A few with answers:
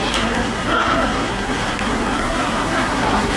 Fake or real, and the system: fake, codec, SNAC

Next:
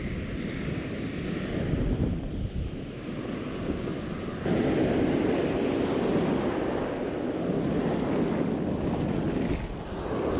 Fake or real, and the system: real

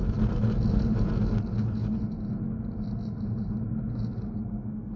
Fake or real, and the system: real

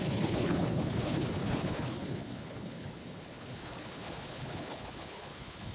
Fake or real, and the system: fake, codec, HILCodec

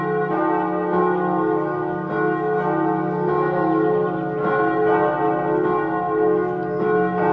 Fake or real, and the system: real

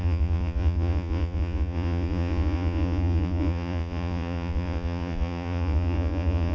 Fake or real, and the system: fake, vocoder, Vocos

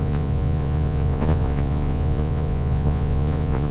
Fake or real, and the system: fake, vocoder, Vocos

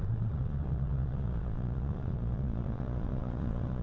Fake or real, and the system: fake, vocoder, Vocos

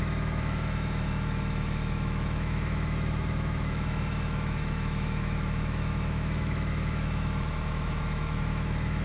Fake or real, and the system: fake, autoencoder, DAC-VAE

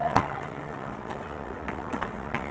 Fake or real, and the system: fake, vocoder, WaveNeXt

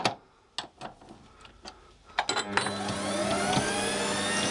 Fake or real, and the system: real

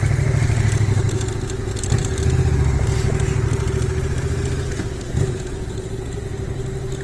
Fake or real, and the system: real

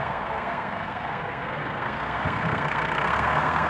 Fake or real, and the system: fake, codec, SNAC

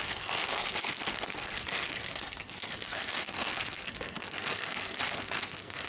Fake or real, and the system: fake, codec, SNAC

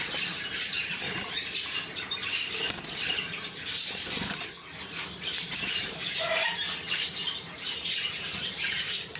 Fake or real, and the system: fake, vocoder, BigVGAN v2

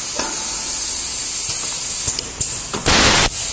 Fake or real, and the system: real